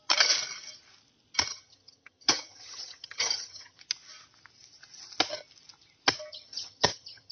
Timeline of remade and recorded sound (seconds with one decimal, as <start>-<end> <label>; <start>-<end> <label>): 0.0-1.5 recorded; 1.5-3.8 remade; 3.8-6.3 recorded; 6.3-7.3 remade